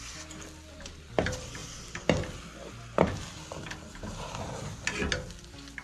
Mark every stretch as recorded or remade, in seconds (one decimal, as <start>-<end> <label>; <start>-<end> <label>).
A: 0.0-5.8 recorded